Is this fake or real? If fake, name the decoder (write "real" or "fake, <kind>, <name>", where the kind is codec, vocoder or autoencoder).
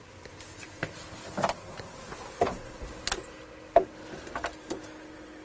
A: real